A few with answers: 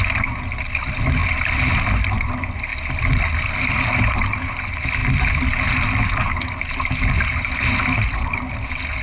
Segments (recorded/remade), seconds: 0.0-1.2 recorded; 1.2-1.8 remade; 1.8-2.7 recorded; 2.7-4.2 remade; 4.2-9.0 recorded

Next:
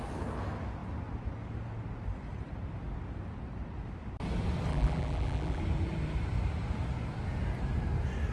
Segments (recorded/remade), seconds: 0.0-4.7 recorded; 4.7-5.6 remade; 5.6-8.3 recorded

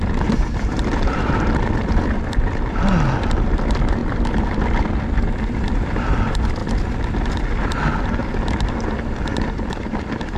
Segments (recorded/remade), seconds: 0.0-4.0 remade; 4.0-5.4 recorded; 5.4-6.6 remade; 6.6-7.4 recorded; 7.4-8.2 remade; 8.2-9.7 recorded; 9.7-10.4 remade

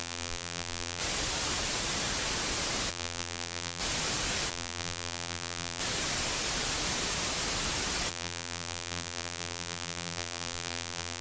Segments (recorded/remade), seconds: 0.0-1.0 remade; 1.0-2.9 recorded; 2.9-3.8 remade; 3.8-4.5 recorded; 4.5-5.8 remade; 5.8-8.1 recorded; 8.1-11.2 remade

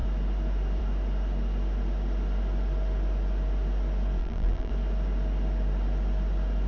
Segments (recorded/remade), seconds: 0.0-4.2 recorded; 4.2-4.7 remade; 4.7-6.7 recorded

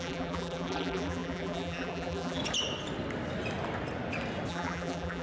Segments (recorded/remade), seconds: 0.0-2.4 remade; 2.4-4.5 recorded; 4.5-5.2 remade

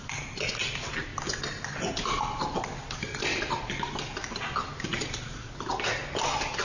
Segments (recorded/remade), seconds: 0.0-6.6 recorded